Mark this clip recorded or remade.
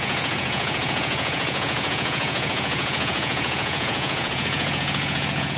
remade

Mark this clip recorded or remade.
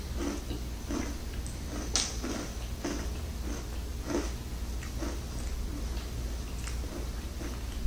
recorded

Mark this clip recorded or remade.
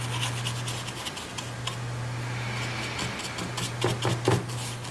recorded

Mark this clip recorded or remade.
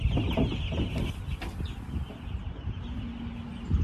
recorded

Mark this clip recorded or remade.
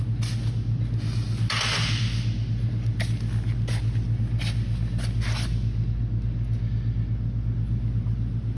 recorded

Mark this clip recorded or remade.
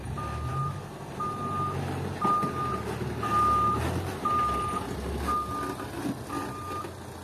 recorded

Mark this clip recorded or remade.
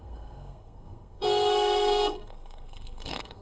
remade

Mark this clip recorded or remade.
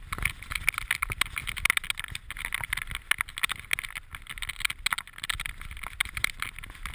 recorded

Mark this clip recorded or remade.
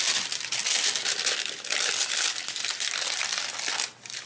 recorded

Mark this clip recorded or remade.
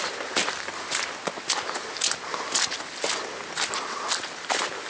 recorded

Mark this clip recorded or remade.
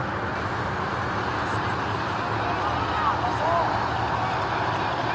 recorded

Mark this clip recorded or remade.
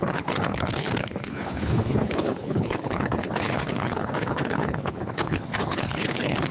remade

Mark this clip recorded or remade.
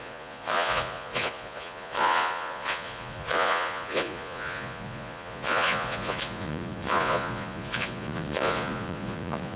remade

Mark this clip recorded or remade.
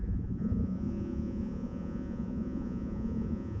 remade